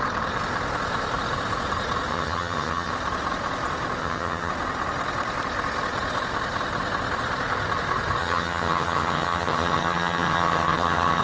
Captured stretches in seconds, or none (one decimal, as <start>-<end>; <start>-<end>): 0.0-2.1; 2.9-4.0; 4.5-8.2